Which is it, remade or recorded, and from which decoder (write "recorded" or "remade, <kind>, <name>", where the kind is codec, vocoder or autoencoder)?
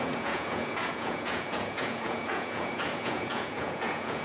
remade, vocoder, Vocos